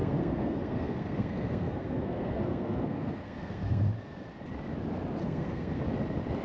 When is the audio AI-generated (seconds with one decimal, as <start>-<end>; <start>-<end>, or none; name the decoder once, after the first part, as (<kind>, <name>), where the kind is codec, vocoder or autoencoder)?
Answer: 0.0-3.8 (codec, SNAC); 5.2-5.8